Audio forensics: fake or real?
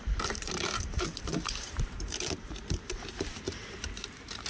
fake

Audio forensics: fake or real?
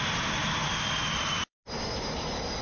real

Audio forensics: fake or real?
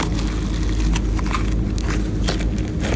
real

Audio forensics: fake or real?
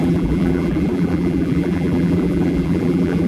fake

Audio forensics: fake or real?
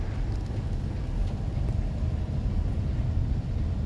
fake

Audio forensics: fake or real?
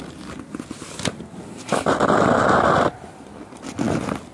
real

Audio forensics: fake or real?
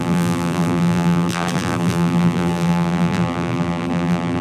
fake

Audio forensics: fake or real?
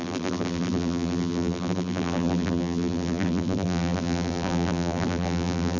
fake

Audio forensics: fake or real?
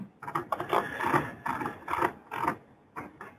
real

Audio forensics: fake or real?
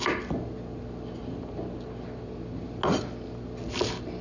real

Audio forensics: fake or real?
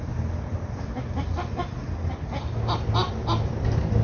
real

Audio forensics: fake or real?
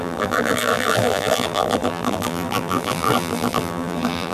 fake